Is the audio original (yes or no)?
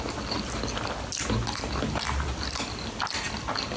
yes